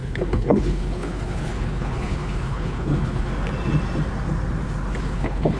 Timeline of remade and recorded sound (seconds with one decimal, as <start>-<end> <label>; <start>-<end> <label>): 0.0-3.3 remade; 3.3-5.0 recorded; 5.0-5.6 remade